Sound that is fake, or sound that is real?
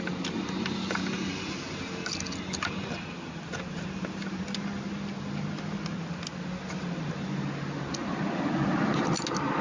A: real